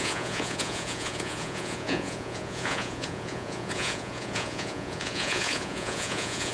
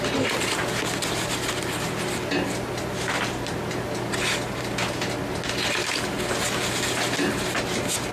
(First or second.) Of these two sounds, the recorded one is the second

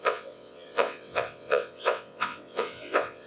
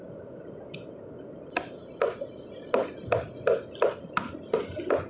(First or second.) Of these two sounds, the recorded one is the second